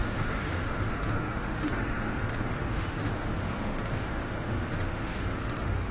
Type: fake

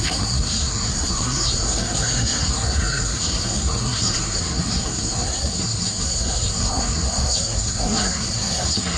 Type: fake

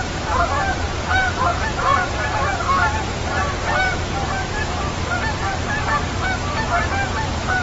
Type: fake